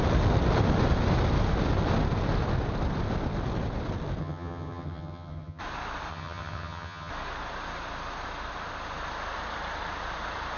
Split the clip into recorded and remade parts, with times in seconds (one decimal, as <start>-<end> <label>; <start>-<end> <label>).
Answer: 0.0-4.2 recorded; 4.2-5.6 remade; 5.6-6.1 recorded; 6.1-7.1 remade; 7.1-10.6 recorded